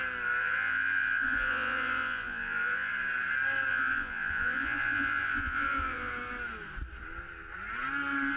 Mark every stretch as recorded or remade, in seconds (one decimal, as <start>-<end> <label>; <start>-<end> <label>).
0.0-0.4 recorded; 0.4-2.9 remade; 2.9-3.7 recorded; 3.7-6.1 remade; 6.1-8.4 recorded